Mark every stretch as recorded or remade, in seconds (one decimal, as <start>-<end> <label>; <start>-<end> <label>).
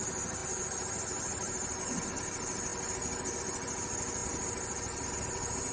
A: 0.0-5.7 recorded